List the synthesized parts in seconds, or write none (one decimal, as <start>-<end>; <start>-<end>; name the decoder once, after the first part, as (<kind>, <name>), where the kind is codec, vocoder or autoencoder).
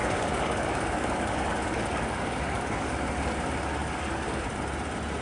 0.0-3.1 (codec, DAC); 3.8-4.4